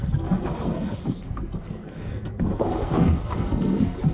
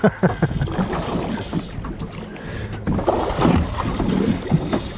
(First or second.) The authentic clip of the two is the second